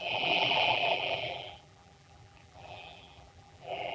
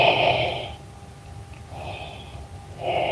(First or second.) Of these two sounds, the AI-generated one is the first